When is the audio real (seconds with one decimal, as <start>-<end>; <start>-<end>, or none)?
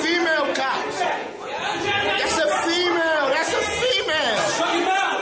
0.0-1.2; 2.1-3.2; 3.9-5.2